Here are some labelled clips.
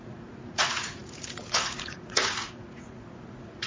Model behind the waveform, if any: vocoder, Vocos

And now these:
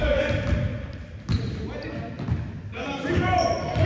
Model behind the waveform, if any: none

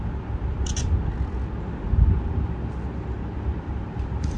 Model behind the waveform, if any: none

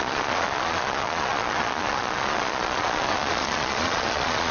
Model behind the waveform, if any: vocoder, Vocos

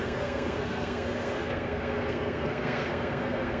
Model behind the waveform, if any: codec, SNAC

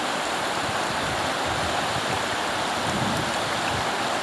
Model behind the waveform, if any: none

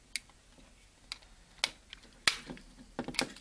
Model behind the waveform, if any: none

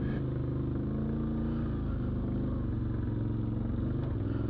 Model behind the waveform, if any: none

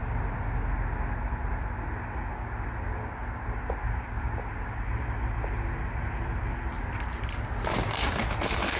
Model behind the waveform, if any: none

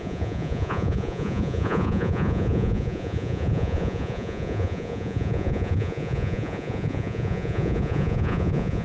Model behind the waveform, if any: vocoder, Vocos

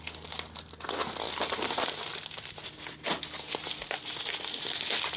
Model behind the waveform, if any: none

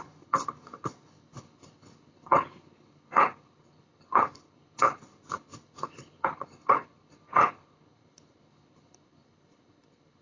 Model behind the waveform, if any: codec, HILCodec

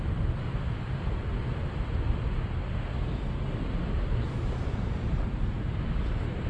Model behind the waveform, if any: none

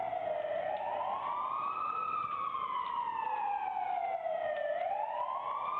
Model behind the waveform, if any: none